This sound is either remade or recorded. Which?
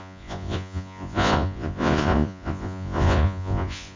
remade